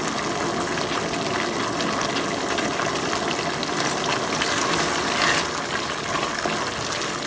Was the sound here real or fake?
real